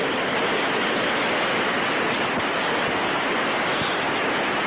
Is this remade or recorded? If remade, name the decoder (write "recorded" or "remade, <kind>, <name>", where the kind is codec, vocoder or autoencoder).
recorded